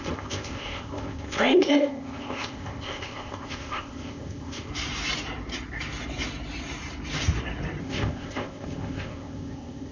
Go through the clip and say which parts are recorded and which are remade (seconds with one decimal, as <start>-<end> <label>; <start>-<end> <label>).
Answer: 0.0-4.7 remade; 4.7-7.8 recorded; 7.8-9.9 remade